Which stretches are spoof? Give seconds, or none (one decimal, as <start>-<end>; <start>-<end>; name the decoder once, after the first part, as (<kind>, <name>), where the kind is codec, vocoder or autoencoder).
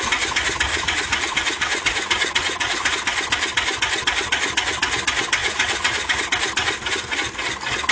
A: 0.7-2.9 (vocoder, Vocos); 5.4-6.2